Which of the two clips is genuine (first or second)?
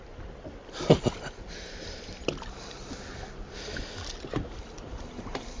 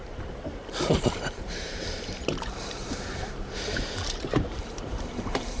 first